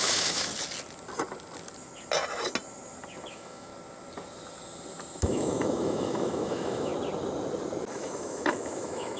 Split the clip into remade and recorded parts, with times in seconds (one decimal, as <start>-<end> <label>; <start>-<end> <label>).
0.0-0.5 remade; 0.5-3.3 recorded; 3.3-3.7 remade; 3.7-5.2 recorded; 5.2-6.9 remade; 6.9-7.9 recorded; 7.9-9.2 remade